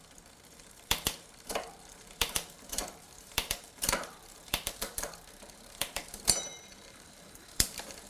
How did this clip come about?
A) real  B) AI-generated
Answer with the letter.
B